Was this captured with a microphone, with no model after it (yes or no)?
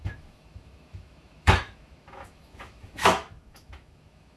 no